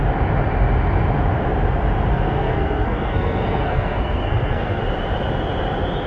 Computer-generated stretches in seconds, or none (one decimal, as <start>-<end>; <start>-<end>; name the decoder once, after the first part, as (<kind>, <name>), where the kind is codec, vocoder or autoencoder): 2.1-4.8 (codec, SNAC)